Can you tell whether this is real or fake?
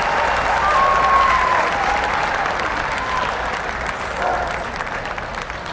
real